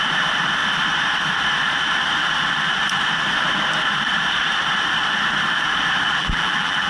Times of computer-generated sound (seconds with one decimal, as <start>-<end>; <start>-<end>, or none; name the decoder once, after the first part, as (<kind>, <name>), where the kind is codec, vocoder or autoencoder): 6.2-6.9 (vocoder, BigVGAN v2)